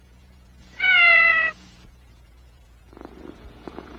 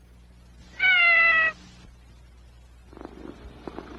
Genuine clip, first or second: second